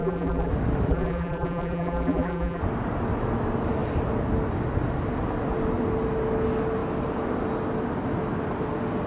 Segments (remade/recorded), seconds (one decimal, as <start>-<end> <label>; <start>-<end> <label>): 0.0-0.5 remade; 0.5-0.9 recorded; 0.9-2.6 remade; 2.6-9.1 recorded